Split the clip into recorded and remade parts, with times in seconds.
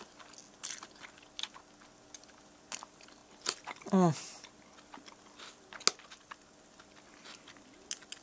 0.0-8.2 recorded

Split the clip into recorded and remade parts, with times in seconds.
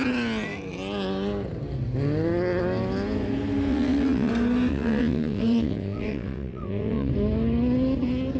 0.0-3.7 recorded; 3.7-4.3 remade; 4.3-4.7 recorded; 4.7-7.1 remade; 7.1-8.4 recorded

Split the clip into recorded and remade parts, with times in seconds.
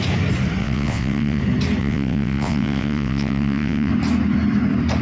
0.0-0.6 recorded; 0.6-1.4 remade; 1.4-1.8 recorded; 1.8-3.9 remade; 3.9-5.0 recorded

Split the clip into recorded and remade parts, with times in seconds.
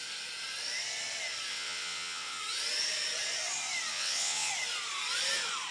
0.0-1.5 recorded; 1.5-2.4 remade; 2.4-3.9 recorded; 3.9-4.5 remade; 4.5-5.7 recorded